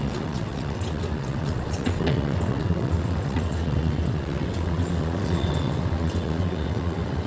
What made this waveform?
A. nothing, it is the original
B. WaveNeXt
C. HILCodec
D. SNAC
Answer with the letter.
B